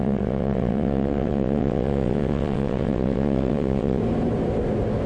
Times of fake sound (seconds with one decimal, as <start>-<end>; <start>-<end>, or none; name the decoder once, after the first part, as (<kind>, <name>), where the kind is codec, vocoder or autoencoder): 0.0-4.0 (vocoder, WaveNeXt)